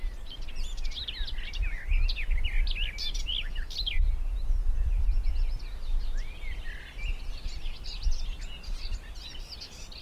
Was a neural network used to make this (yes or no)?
no